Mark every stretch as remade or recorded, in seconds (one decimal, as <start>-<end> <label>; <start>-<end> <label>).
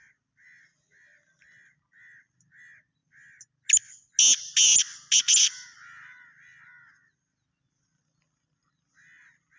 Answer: 0.0-9.6 recorded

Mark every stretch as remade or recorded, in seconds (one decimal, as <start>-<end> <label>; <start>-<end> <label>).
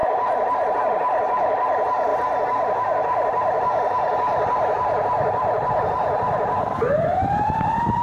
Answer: 0.0-0.8 recorded; 0.8-8.0 remade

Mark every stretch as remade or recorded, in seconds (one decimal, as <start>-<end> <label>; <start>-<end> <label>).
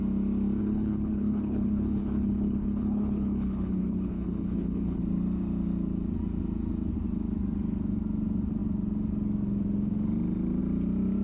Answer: 0.0-0.6 recorded; 0.6-5.0 remade; 5.0-11.2 recorded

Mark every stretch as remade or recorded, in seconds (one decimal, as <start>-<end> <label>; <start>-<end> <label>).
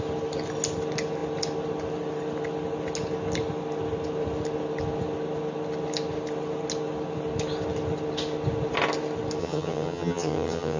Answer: 0.0-9.4 recorded; 9.4-10.8 remade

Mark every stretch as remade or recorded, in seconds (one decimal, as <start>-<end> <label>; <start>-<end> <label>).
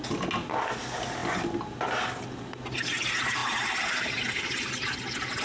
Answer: 0.0-5.4 recorded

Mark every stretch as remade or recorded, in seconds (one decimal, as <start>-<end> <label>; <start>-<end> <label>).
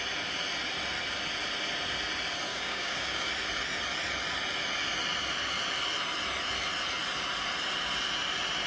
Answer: 0.0-2.5 recorded; 2.5-3.3 remade; 3.3-8.7 recorded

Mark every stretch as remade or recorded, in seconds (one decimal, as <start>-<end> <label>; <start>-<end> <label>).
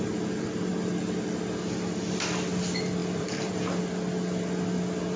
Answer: 0.0-3.0 recorded; 3.0-3.5 remade; 3.5-5.2 recorded